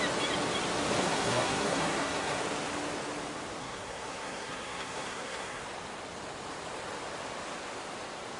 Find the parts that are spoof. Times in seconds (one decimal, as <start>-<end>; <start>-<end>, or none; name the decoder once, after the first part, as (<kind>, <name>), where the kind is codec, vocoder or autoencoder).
1.0-2.4 (codec, SNAC); 3.6-5.6